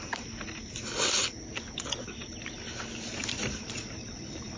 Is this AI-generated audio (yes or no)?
no